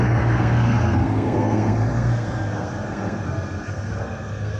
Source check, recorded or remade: remade